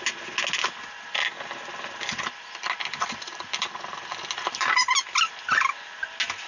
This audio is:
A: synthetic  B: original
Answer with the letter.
B